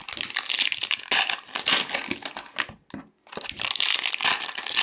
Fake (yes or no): no